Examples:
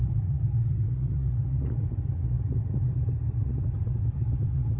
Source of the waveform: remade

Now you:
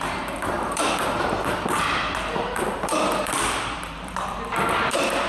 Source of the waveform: remade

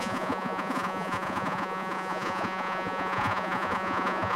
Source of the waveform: remade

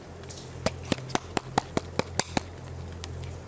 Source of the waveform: recorded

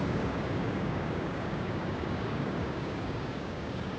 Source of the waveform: remade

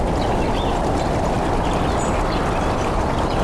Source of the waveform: recorded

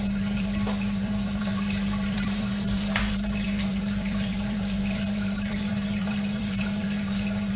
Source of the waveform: remade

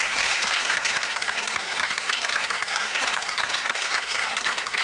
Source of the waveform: remade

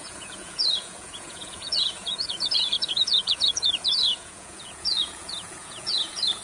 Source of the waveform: remade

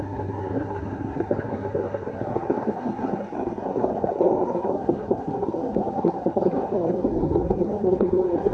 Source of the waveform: remade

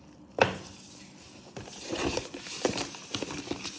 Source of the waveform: recorded